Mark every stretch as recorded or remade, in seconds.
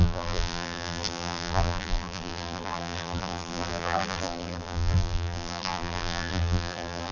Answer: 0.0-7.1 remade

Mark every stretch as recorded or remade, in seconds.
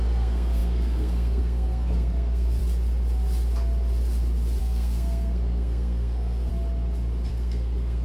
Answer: 0.0-2.6 remade; 2.6-4.6 recorded; 4.6-6.5 remade; 6.5-7.3 recorded; 7.3-8.0 remade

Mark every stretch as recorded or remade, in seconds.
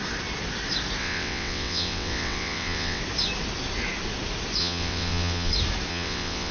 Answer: 0.0-1.0 recorded; 1.0-3.0 remade; 3.0-4.6 recorded; 4.6-5.5 remade; 5.5-5.9 recorded; 5.9-6.5 remade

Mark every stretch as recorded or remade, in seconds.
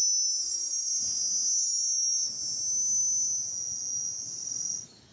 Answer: 0.0-1.0 remade; 1.0-1.5 recorded; 1.5-2.3 remade; 2.3-5.1 recorded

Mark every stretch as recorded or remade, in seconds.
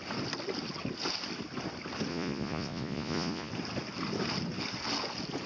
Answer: 0.0-2.1 recorded; 2.1-3.5 remade; 3.5-5.5 recorded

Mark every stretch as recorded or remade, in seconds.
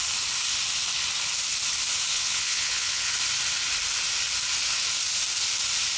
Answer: 0.0-2.1 recorded; 2.1-3.1 remade; 3.1-6.0 recorded